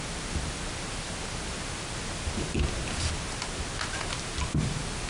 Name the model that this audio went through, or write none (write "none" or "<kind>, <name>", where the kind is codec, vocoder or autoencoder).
none